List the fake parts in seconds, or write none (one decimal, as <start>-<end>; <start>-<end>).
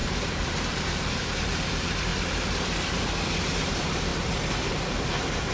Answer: 0.0-2.1; 3.4-4.1